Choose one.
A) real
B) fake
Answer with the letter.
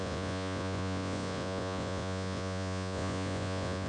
B